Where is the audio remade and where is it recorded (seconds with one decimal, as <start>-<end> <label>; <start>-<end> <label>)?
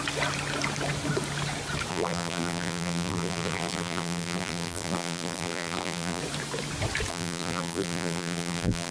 0.0-1.9 recorded; 1.9-6.2 remade; 6.2-7.1 recorded; 7.1-8.9 remade